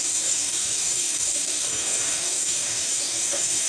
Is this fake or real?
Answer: fake